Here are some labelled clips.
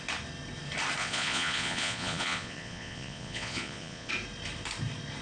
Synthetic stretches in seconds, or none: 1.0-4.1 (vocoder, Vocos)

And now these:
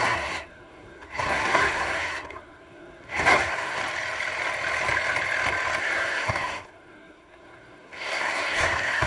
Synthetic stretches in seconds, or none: 0.0-3.8 (codec, SNAC); 5.8-9.1

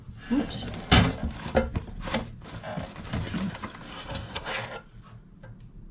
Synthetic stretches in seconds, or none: 3.9-4.5 (codec, SNAC)

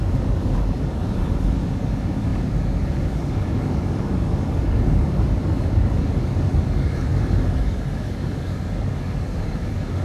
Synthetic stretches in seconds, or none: 0.0-10.0 (codec, DAC)

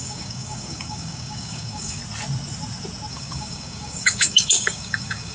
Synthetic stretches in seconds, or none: 0.0-2.0 (codec, DAC); 3.1-5.3

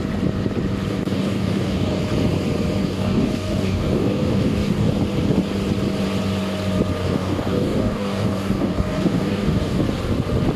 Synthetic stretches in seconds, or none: 0.9-2.0 (codec, DAC); 2.8-4.9; 7.0-9.8

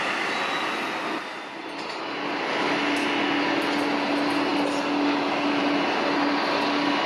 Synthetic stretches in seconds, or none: none

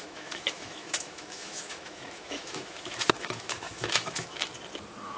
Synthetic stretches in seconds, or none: 0.0-4.5 (autoencoder, DAC-VAE)